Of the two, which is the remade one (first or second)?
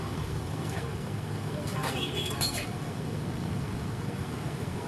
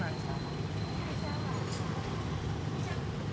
first